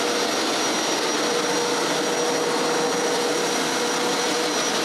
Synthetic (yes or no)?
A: no